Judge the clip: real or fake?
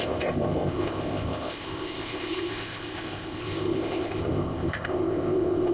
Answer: fake